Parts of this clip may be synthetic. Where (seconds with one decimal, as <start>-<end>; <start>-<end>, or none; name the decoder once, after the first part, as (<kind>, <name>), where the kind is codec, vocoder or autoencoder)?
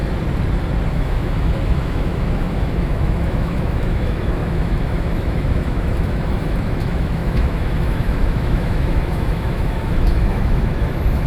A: 0.9-11.3 (autoencoder, DAC-VAE)